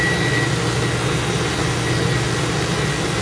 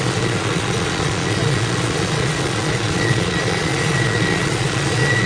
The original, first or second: first